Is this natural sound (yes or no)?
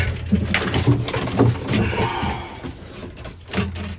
yes